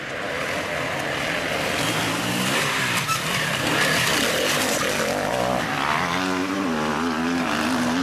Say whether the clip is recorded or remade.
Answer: recorded